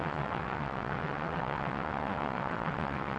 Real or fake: fake